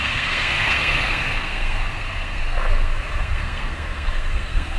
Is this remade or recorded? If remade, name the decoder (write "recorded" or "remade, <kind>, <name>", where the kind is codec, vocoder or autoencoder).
remade, codec, SNAC